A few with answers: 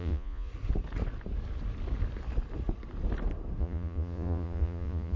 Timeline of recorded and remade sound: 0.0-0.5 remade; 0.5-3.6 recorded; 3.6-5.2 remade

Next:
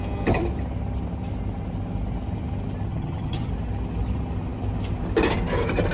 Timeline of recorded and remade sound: 0.0-2.9 recorded; 2.9-3.5 remade; 3.5-5.9 recorded

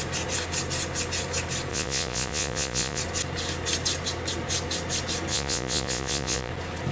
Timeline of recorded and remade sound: 0.0-1.7 recorded; 1.7-3.0 remade; 3.0-5.3 recorded; 5.3-6.5 remade; 6.5-6.9 recorded

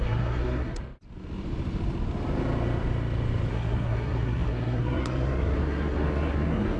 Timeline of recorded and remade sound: 0.0-0.8 remade; 0.8-3.5 recorded; 3.5-6.8 remade

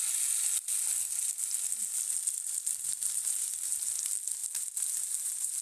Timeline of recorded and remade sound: 0.0-4.4 recorded; 4.4-5.6 remade

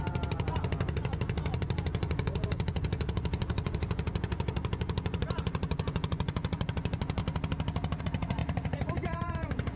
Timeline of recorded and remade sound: 0.0-7.2 remade; 7.2-8.0 recorded; 8.0-9.8 remade

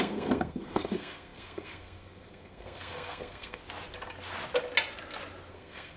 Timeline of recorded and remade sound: 0.0-3.6 remade; 3.6-5.5 recorded; 5.5-6.0 remade